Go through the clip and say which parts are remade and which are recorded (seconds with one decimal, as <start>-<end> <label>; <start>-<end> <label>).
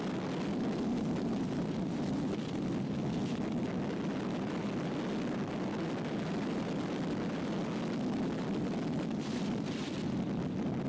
0.0-10.9 recorded